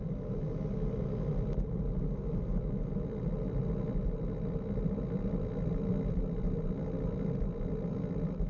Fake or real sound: real